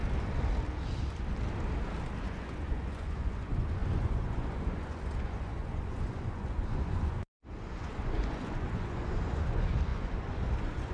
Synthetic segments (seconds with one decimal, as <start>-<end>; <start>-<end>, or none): 2.2-10.9